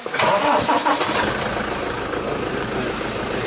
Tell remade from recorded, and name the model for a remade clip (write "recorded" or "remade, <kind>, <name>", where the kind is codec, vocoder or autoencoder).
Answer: recorded